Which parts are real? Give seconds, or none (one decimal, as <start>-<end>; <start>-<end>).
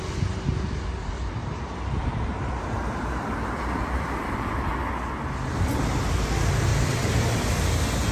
0.0-1.4; 4.5-6.7; 7.4-8.1